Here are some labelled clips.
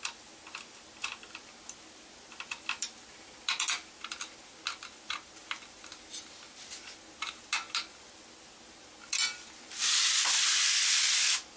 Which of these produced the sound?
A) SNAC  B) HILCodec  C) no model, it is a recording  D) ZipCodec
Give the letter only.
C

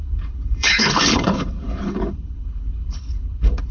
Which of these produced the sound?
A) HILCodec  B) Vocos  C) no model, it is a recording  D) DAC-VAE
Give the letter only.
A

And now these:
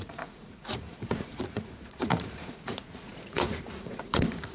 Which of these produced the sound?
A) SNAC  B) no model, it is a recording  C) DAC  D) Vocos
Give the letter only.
D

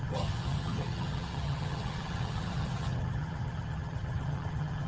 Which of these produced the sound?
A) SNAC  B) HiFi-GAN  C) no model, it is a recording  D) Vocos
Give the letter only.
B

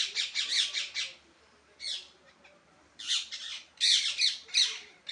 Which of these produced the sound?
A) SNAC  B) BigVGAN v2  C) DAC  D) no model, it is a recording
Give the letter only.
B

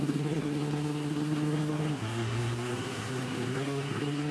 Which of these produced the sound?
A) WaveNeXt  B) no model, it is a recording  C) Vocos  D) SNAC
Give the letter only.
D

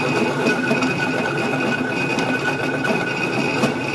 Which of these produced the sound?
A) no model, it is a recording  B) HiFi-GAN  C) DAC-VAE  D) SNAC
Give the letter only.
A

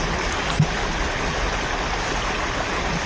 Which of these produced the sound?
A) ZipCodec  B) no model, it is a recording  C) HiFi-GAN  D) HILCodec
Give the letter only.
B